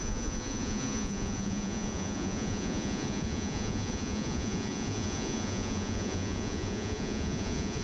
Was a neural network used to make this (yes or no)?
yes